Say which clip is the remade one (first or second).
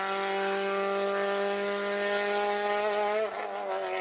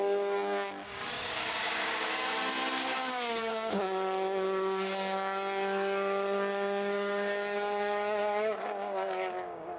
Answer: second